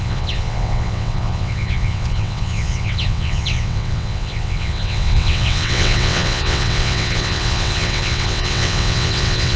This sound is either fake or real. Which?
fake